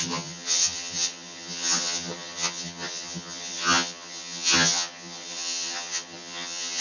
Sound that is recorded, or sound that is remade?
remade